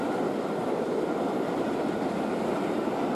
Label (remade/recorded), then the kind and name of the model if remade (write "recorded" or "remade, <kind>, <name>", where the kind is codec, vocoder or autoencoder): recorded